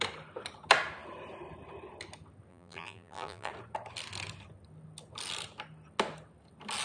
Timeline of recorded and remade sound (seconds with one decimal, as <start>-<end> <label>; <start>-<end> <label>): 0.0-2.5 recorded; 2.5-3.5 remade; 3.5-6.8 recorded